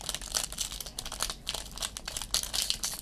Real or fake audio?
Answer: real